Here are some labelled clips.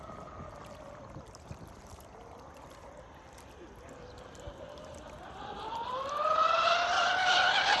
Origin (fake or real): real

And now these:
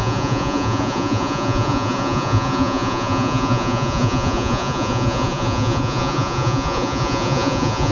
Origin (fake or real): fake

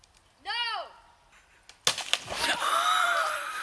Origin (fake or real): real